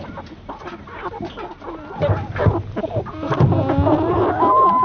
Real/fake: real